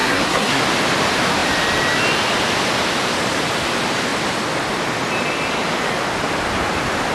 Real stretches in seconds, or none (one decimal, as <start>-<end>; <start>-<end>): 0.6-7.1